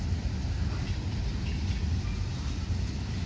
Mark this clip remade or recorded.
recorded